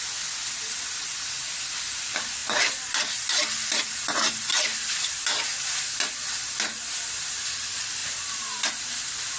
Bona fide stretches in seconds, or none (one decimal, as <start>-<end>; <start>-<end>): 0.0-9.4